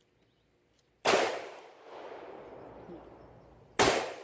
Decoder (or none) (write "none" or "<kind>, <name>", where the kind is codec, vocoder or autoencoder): none